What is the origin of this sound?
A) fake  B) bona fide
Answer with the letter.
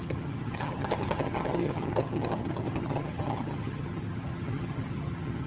A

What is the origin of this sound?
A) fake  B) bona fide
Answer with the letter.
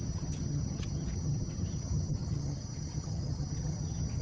A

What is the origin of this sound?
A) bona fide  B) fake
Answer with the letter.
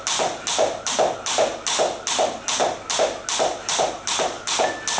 A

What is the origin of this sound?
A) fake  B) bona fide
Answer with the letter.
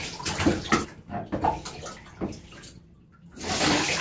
B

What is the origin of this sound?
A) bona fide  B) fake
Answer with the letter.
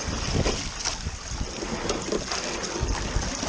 A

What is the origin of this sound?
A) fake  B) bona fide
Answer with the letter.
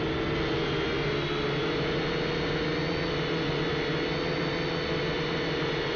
B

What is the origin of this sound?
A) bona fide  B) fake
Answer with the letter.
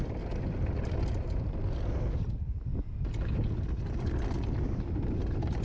A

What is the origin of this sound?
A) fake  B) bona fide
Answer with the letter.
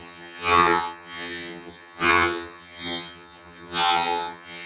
A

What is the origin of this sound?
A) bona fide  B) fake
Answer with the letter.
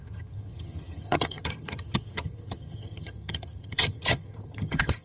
B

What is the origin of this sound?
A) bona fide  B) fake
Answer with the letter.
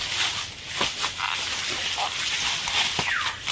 A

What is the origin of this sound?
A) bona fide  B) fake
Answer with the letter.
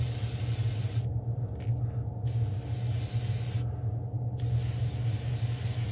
A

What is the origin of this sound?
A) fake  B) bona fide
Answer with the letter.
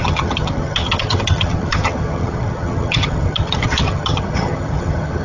A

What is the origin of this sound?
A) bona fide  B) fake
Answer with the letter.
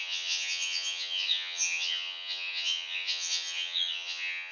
B